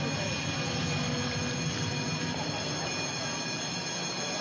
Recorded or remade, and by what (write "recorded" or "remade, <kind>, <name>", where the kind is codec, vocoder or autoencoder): recorded